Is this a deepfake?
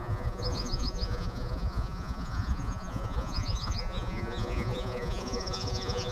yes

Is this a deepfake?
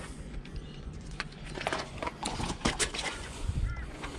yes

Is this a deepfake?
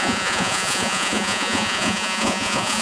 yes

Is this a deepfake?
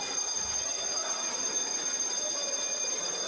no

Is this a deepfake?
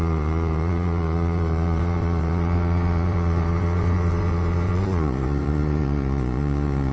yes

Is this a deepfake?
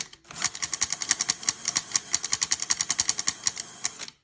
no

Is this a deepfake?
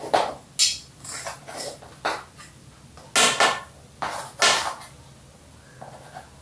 no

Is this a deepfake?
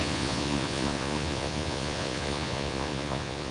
yes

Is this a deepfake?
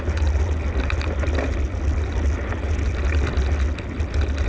no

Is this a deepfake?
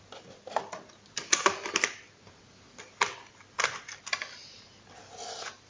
no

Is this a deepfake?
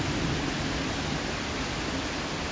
no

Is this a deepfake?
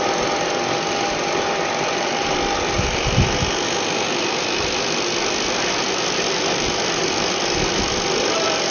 no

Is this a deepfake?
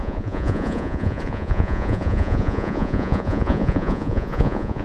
yes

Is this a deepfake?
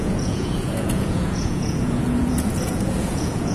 yes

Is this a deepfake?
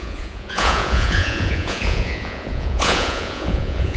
yes